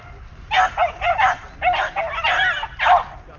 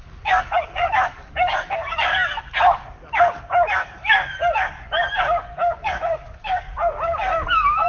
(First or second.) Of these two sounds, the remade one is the second